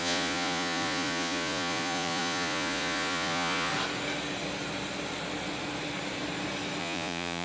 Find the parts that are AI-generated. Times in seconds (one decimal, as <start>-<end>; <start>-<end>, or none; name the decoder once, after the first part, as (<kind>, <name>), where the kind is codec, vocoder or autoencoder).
0.0-3.7 (vocoder, Vocos); 6.8-7.4